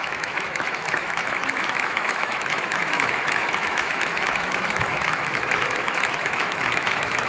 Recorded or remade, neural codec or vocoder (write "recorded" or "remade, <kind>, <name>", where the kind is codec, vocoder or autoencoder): remade, autoencoder, DAC-VAE